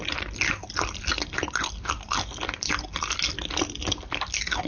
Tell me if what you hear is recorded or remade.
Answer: recorded